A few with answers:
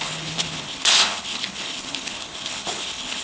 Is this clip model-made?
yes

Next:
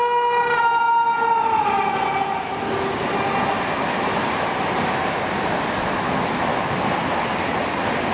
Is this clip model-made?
no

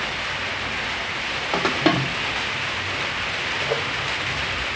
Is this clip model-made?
no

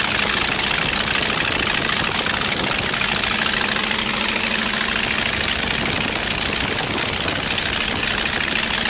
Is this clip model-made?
no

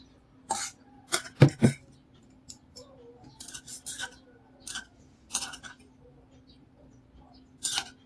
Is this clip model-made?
no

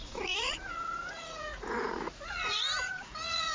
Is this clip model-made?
yes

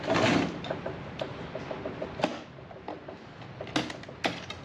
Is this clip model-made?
no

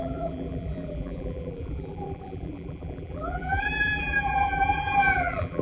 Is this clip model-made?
yes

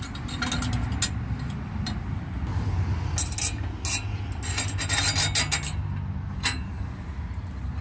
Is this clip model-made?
no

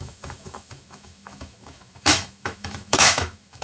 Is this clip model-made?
yes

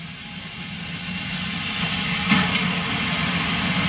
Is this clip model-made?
no